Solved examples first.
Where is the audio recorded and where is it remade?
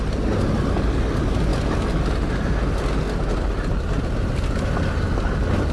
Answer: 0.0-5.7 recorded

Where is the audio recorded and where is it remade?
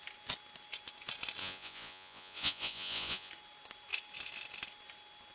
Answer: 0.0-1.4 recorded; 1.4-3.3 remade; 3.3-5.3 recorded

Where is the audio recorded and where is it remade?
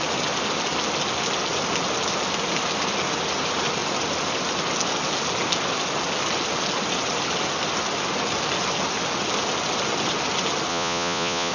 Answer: 0.0-10.7 recorded; 10.7-11.5 remade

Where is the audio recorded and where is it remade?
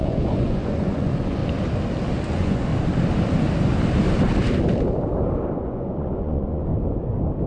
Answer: 0.0-1.4 remade; 1.4-2.3 recorded; 2.3-2.7 remade; 2.7-5.6 recorded; 5.6-6.7 remade; 6.7-7.5 recorded